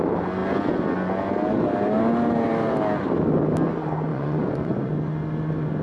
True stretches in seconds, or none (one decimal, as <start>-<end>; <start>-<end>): 0.0-4.1; 4.9-5.8